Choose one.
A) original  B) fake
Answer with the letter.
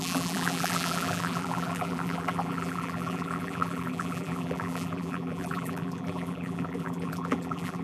B